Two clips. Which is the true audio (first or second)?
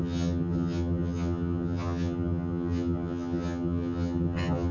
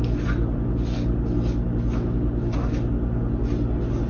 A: second